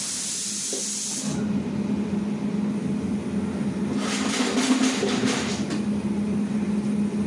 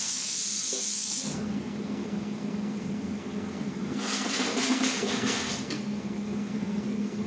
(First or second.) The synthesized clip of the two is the second